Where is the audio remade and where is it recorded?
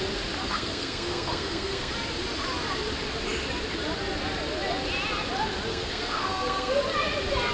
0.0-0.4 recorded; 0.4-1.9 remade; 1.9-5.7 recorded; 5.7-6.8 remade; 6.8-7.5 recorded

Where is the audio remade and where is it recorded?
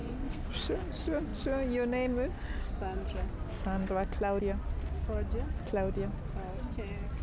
0.0-0.5 remade; 0.5-7.2 recorded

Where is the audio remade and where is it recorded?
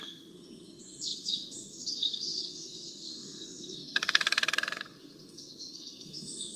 0.0-6.6 remade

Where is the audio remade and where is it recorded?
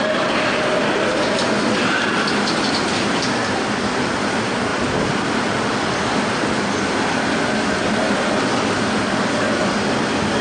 0.0-10.4 recorded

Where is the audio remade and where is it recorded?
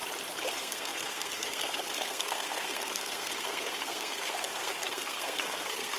0.0-0.5 recorded; 0.5-6.0 remade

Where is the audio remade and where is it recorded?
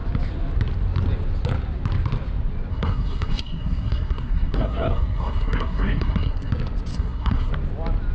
0.0-2.7 recorded; 2.7-6.5 remade; 6.5-6.9 recorded; 6.9-7.5 remade; 7.5-8.1 recorded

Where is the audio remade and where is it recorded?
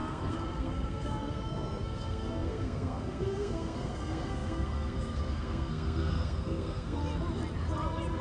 0.0-7.0 remade; 7.0-8.2 recorded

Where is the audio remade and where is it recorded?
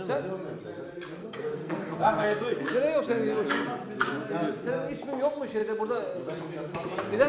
0.0-1.2 recorded; 1.2-2.7 remade; 2.7-7.3 recorded